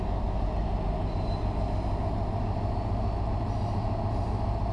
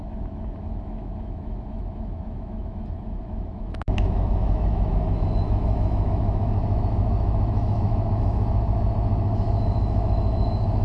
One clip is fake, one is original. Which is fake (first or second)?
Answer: second